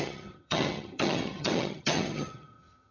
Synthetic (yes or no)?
yes